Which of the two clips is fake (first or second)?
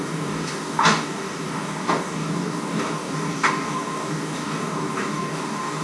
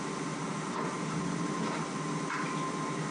first